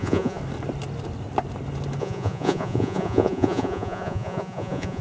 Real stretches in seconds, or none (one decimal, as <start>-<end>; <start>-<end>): 0.4-2.0